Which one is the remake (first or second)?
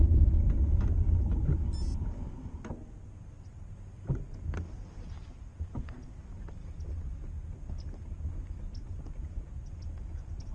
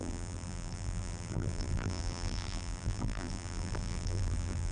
second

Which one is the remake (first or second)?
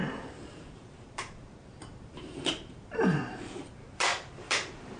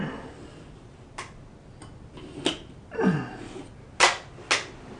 first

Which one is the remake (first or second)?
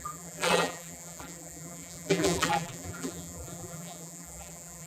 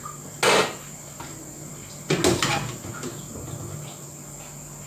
first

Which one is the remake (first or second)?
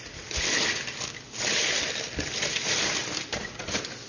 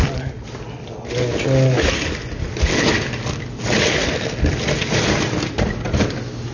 first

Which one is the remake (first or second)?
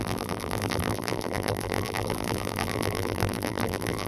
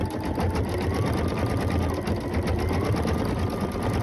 first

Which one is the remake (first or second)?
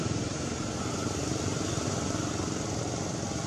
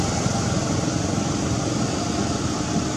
first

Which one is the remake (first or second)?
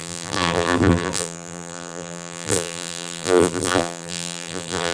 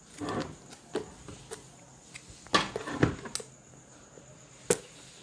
first